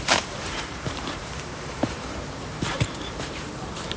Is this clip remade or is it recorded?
remade